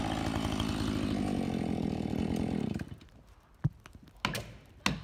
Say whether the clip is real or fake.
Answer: real